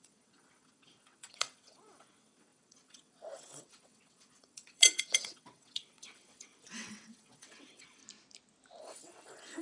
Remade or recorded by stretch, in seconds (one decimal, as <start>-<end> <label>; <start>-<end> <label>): 0.0-8.0 remade; 8.0-8.8 recorded; 8.8-9.6 remade